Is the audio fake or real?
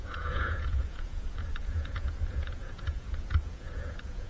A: fake